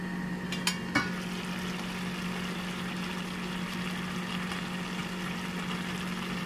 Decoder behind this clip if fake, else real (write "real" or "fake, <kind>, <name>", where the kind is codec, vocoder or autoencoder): real